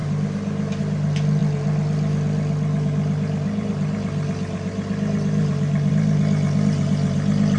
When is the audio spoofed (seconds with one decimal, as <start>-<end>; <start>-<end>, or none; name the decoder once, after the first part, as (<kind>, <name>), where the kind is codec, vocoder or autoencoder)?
none